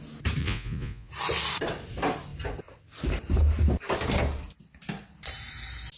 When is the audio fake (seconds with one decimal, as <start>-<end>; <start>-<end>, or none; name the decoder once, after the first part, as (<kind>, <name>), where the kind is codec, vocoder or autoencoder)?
0.4-1.1 (vocoder, Vocos)